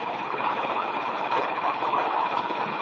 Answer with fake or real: fake